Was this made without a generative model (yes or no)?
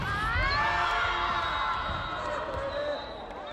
yes